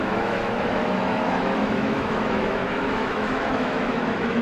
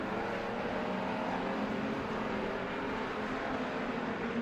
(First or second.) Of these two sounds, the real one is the second